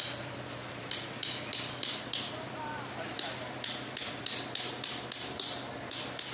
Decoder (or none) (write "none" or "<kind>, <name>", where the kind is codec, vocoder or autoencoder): vocoder, BigVGAN v2